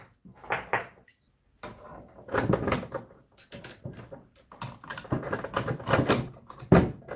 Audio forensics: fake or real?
real